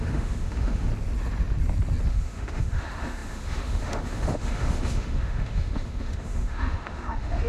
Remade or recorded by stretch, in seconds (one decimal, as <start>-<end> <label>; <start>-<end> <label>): 0.0-0.9 remade; 0.9-2.1 recorded; 2.1-7.5 remade

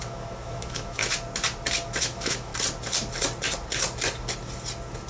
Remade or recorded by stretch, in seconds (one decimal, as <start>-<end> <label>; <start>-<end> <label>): 0.0-1.0 remade; 1.0-2.0 recorded; 2.0-2.5 remade; 2.5-5.1 recorded